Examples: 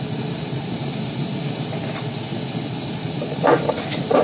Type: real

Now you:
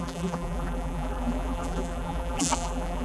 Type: fake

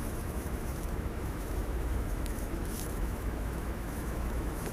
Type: fake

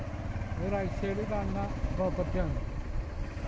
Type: real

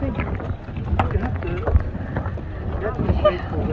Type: real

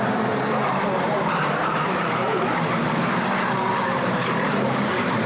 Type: fake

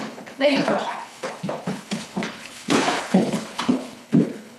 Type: fake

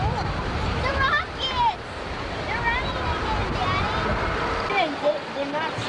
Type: real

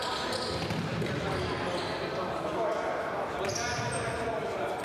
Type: real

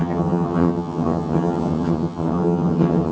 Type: fake